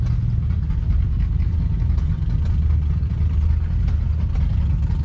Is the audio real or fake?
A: real